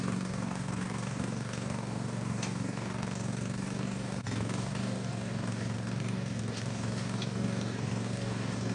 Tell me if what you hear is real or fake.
fake